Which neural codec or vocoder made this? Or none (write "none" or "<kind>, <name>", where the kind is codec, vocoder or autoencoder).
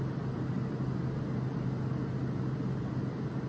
none